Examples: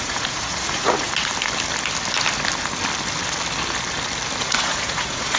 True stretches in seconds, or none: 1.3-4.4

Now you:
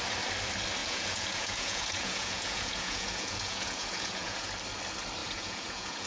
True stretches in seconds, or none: 0.0-0.8; 4.5-5.2

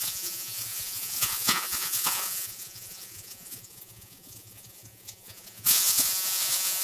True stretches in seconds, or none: none

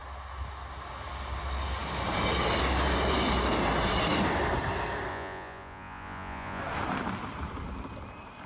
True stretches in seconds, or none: 0.0-5.1; 6.6-8.5

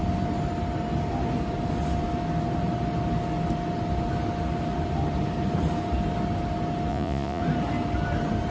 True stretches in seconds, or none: 0.0-6.9; 7.4-8.5

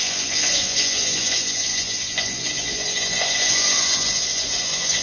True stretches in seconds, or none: none

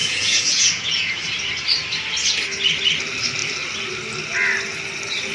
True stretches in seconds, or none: 1.2-5.3